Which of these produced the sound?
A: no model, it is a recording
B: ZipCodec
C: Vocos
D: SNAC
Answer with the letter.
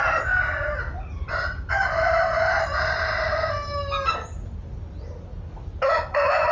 A